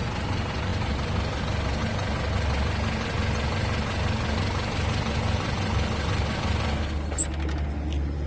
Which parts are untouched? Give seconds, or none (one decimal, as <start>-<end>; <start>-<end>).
0.0-8.3